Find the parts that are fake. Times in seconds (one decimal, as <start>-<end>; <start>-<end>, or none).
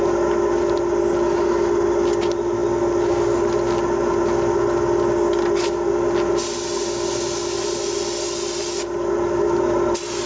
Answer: none